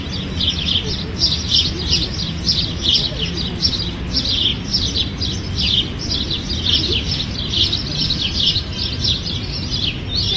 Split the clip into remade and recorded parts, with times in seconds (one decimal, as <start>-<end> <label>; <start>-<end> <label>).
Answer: 0.0-10.4 recorded